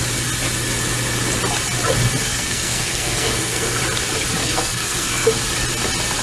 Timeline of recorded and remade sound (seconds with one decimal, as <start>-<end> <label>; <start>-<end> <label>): 0.0-2.2 recorded; 2.2-3.8 remade; 3.8-4.4 recorded; 4.4-5.3 remade; 5.3-6.2 recorded

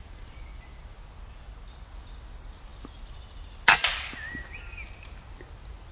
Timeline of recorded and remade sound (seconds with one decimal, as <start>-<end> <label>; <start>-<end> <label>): 0.0-5.9 recorded

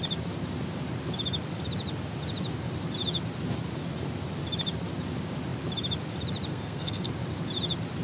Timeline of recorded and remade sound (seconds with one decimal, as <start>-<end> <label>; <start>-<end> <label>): 0.0-6.5 recorded; 6.5-7.1 remade; 7.1-8.0 recorded

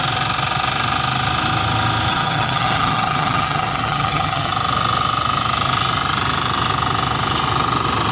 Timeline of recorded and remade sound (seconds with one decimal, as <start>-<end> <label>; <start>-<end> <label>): 0.0-2.1 recorded; 2.1-4.5 remade; 4.5-8.1 recorded

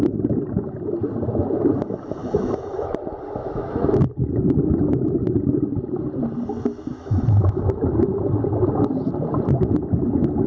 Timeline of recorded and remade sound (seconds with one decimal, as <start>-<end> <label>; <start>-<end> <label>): 0.0-2.2 recorded; 2.2-2.9 remade; 2.9-3.4 recorded; 3.4-4.0 remade; 4.0-6.9 recorded; 6.9-7.8 remade; 7.8-10.5 recorded

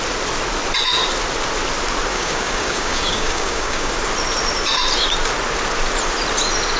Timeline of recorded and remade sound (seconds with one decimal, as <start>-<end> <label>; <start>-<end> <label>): 0.0-2.1 recorded; 2.1-3.9 remade; 3.9-6.8 recorded

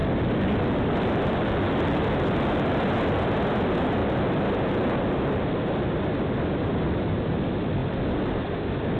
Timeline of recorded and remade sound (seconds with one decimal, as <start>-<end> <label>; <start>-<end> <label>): 0.0-9.0 recorded